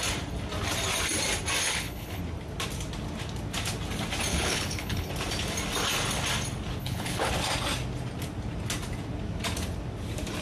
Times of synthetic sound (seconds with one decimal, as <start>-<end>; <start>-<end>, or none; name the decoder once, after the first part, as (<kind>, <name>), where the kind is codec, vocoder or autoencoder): 1.6-2.2 (codec, HILCodec); 4.3-5.1; 6.8-7.3